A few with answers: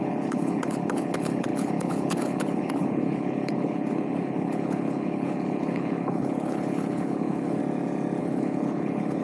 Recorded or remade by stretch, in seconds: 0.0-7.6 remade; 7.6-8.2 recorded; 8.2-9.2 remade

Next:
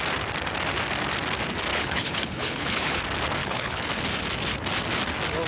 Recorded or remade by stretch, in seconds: 0.0-1.7 recorded; 1.7-3.0 remade; 3.0-3.4 recorded; 3.4-3.9 remade; 3.9-5.5 recorded

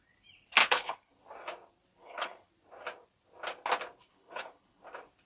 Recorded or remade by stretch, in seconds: 0.0-0.6 recorded; 0.6-1.1 remade; 1.1-2.0 recorded; 2.0-2.5 remade; 2.5-4.1 recorded; 4.1-4.8 remade; 4.8-5.3 recorded

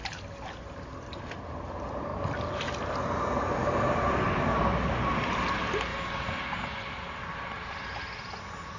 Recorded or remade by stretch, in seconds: 0.0-8.8 recorded

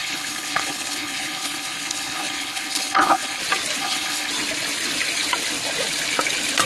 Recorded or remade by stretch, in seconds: 0.0-3.4 remade; 3.4-3.8 recorded; 3.8-4.3 remade; 4.3-6.7 recorded

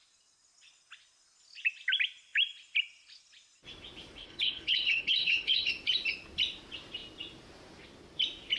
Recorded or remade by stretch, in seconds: 0.0-4.2 recorded; 4.2-5.7 remade; 5.7-8.6 recorded